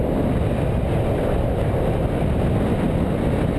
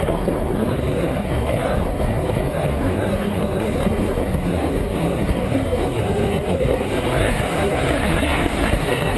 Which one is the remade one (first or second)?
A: second